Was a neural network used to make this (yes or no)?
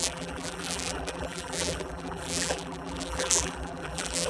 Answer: yes